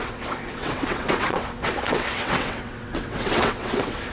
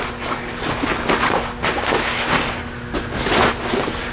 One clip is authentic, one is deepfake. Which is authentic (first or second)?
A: second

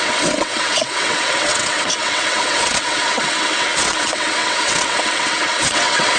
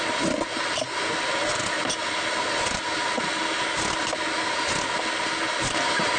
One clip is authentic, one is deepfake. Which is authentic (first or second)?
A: second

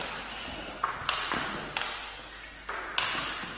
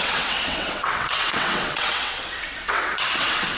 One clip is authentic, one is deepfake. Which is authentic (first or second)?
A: first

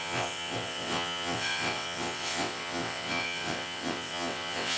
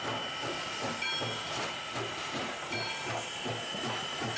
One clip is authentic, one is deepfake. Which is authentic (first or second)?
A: second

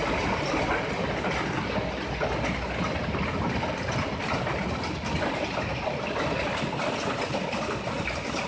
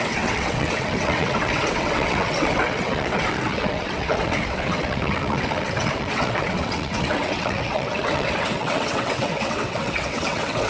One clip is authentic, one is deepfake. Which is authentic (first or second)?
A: first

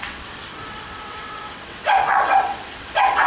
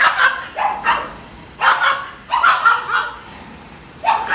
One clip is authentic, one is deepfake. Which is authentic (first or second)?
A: second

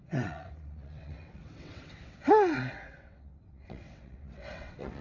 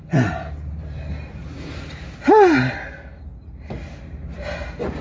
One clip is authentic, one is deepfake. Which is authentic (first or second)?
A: second